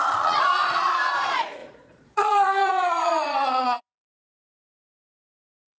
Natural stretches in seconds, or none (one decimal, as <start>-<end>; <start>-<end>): none